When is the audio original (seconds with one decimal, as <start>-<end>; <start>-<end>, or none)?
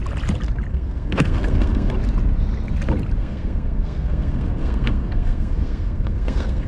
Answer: 0.0-0.7; 1.9-3.2